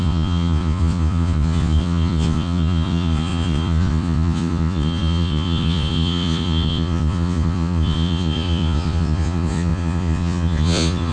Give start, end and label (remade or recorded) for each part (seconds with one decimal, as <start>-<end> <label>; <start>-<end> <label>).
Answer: 0.0-11.1 remade